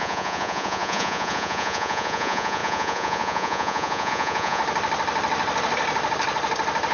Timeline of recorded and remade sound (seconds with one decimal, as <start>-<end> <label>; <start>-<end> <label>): 0.0-4.6 remade; 4.6-6.9 recorded